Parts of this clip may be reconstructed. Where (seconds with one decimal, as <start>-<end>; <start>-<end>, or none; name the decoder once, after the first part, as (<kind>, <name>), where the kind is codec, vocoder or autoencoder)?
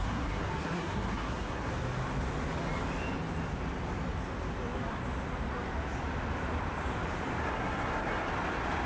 0.0-1.7 (codec, SNAC); 7.4-8.3